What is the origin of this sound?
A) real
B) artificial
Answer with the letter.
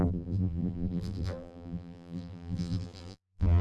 B